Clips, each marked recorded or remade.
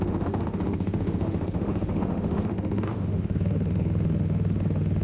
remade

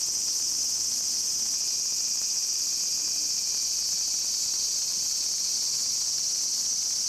recorded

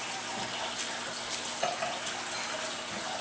recorded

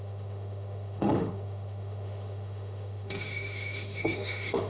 remade